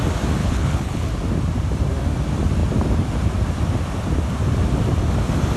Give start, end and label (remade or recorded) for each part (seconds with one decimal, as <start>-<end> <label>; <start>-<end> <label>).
0.0-0.4 recorded; 0.4-1.1 remade; 1.1-5.6 recorded